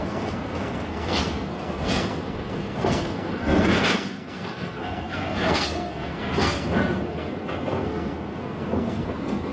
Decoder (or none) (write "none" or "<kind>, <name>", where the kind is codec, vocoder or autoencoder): codec, SNAC